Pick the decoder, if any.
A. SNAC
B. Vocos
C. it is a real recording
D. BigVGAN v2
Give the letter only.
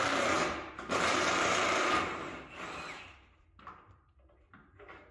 D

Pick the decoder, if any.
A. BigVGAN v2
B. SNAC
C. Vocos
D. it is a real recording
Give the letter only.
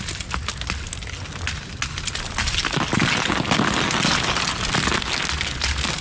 D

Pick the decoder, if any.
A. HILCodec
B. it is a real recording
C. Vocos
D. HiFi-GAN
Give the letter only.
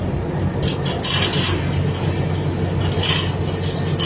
B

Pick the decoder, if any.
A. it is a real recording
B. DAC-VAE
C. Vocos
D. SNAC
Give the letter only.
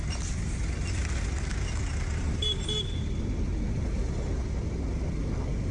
A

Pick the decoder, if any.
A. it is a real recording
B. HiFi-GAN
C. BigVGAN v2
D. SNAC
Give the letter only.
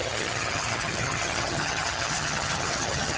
B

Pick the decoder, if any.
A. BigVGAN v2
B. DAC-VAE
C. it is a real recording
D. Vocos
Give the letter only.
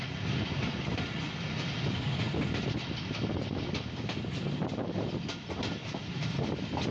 C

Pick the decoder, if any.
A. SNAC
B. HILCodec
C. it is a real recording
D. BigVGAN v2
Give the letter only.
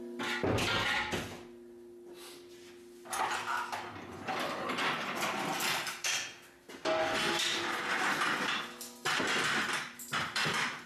C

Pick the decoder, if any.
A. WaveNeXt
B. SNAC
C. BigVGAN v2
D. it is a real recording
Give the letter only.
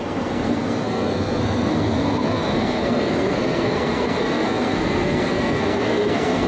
B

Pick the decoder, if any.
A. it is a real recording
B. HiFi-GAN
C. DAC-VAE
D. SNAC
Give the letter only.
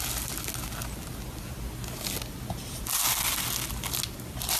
A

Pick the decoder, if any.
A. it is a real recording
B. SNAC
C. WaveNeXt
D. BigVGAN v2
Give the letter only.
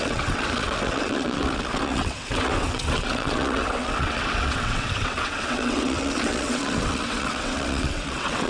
C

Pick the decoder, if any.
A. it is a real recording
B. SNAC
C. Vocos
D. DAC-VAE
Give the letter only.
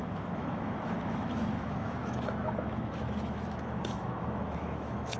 D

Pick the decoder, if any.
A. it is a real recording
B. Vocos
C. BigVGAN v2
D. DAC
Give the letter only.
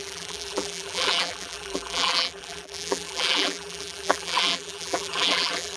C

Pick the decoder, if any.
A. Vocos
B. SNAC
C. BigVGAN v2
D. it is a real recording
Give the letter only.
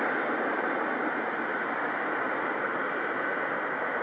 D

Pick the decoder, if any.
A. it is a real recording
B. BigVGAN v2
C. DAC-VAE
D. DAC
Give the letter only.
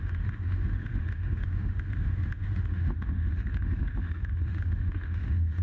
C